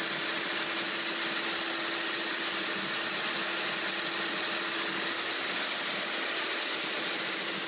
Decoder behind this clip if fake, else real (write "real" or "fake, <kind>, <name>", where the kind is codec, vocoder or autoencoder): real